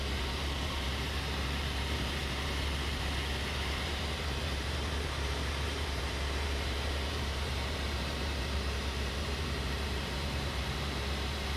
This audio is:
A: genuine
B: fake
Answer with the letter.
B